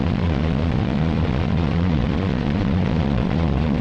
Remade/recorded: remade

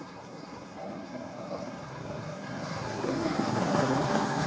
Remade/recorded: remade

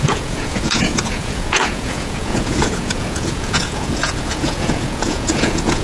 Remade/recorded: remade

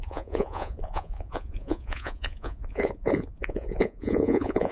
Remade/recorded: remade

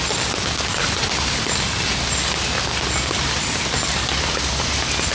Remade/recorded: recorded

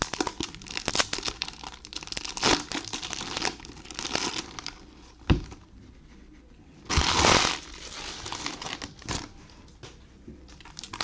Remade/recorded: recorded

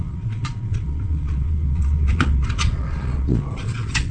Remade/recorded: remade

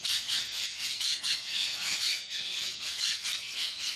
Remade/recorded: remade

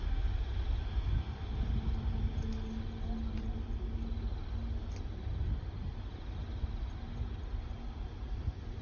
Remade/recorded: recorded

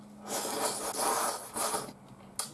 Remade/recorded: recorded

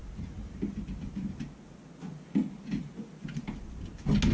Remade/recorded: recorded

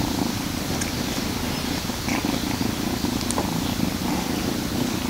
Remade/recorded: recorded